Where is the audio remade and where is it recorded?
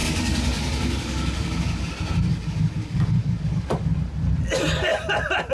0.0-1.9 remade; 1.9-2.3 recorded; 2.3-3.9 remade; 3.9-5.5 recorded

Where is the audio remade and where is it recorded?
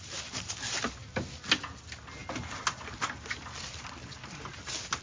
0.0-5.0 recorded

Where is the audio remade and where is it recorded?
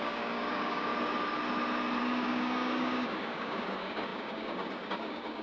0.0-0.9 remade; 0.9-2.0 recorded; 2.0-5.4 remade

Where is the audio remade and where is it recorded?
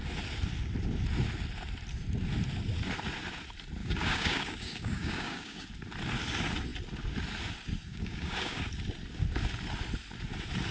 0.0-3.8 recorded; 3.8-5.7 remade; 5.7-7.9 recorded; 7.9-8.6 remade; 8.6-10.7 recorded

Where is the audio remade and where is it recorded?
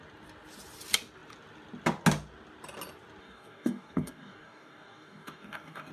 0.0-3.2 recorded; 3.2-5.9 remade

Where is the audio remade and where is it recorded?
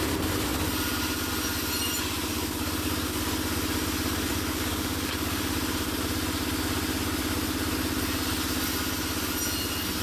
0.0-2.3 recorded; 2.3-3.2 remade; 3.2-4.3 recorded; 4.3-5.4 remade; 5.4-10.0 recorded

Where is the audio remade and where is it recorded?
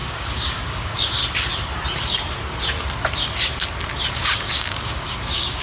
0.0-1.2 remade; 1.2-4.1 recorded; 4.1-5.6 remade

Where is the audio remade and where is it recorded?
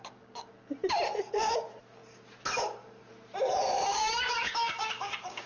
0.0-0.5 remade; 0.5-3.9 recorded; 3.9-5.5 remade